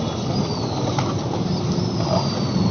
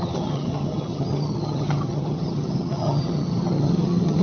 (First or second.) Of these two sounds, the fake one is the second